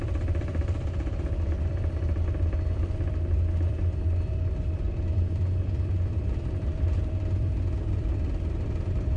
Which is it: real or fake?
fake